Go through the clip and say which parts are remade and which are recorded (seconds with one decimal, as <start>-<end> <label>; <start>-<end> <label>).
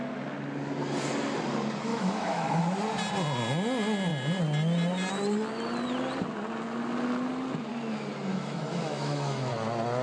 0.0-1.9 recorded; 1.9-2.6 remade; 2.6-8.3 recorded; 8.3-9.5 remade; 9.5-10.0 recorded